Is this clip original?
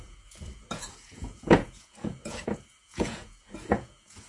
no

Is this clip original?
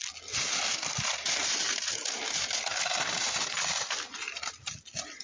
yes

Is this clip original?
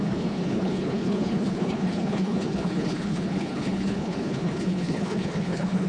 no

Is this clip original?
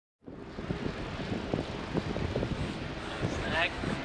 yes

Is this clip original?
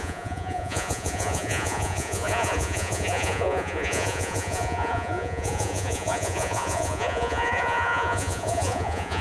no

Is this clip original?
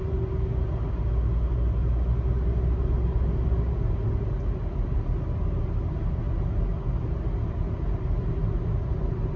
yes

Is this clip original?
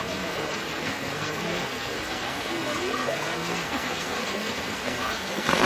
no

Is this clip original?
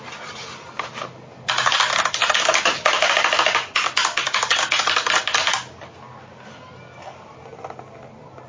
yes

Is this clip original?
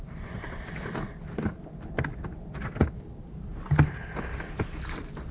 yes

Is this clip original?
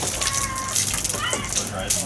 yes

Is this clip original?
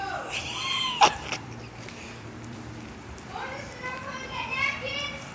no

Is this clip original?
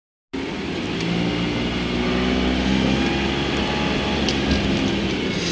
yes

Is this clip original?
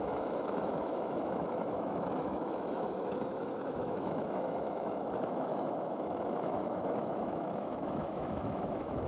no